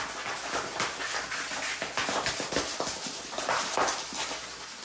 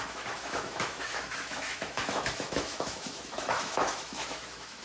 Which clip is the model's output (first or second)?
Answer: second